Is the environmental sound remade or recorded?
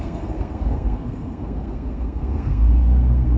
remade